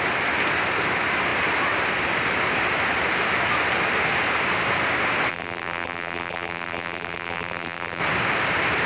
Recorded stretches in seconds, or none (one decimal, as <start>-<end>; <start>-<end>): 0.0-5.3; 8.0-8.9

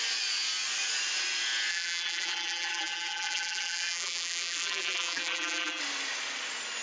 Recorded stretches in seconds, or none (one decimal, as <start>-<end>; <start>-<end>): 0.0-1.7; 5.8-6.8

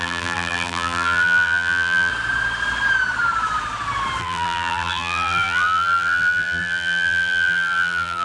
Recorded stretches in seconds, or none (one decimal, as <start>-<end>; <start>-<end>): 2.1-4.2

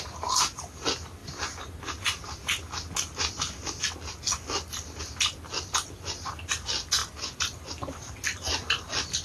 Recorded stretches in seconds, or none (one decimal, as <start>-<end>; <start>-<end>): 0.0-7.0; 7.7-9.2

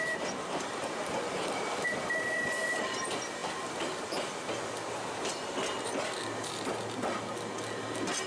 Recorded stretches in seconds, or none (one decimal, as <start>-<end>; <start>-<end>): 0.0-1.3; 2.8-8.3

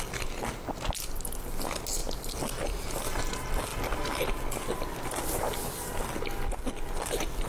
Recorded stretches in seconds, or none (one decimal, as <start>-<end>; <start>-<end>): 0.0-7.5